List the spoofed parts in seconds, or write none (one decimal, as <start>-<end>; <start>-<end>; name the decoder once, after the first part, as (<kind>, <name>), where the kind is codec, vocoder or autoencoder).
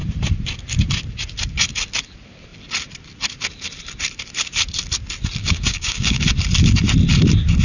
5.4-6.2 (codec, DAC)